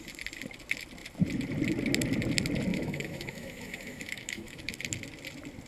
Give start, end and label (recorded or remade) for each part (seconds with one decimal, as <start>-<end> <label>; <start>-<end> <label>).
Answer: 0.0-2.7 recorded; 2.7-4.6 remade; 4.6-5.7 recorded